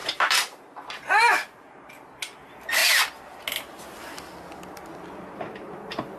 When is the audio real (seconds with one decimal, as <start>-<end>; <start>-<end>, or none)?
0.7-1.3; 1.8-6.2